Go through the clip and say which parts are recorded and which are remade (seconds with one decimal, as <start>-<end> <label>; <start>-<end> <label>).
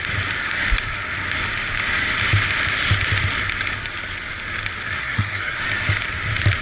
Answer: 0.0-5.0 recorded; 5.0-5.6 remade; 5.6-6.6 recorded